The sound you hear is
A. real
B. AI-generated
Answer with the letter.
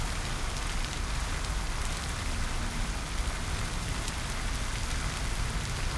A